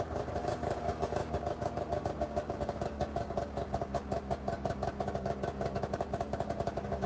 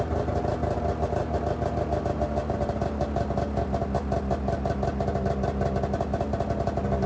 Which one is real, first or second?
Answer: second